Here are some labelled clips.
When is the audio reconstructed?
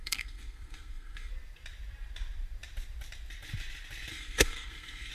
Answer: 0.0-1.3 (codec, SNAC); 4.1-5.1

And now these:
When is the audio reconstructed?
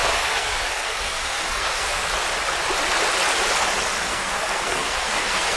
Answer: 0.0-2.1 (codec, SNAC); 4.1-5.6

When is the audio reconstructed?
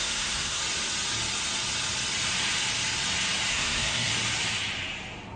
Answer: 0.0-0.6 (codec, SNAC); 3.5-4.1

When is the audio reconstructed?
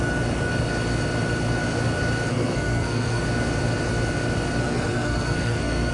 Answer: 2.3-3.2 (codec, SNAC); 4.6-5.9